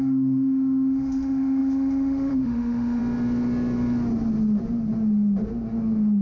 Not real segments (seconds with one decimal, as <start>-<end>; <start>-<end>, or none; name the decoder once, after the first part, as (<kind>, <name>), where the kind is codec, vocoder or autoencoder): 0.0-3.0 (autoencoder, DAC-VAE)